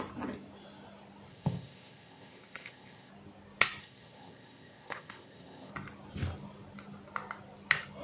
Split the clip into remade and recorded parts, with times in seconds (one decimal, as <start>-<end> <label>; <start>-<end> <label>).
0.0-1.3 recorded; 1.3-3.1 remade; 3.1-3.8 recorded; 3.8-5.7 remade; 5.7-8.0 recorded